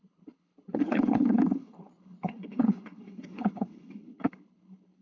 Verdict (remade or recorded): remade